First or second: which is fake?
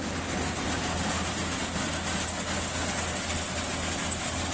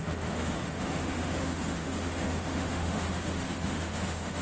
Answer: second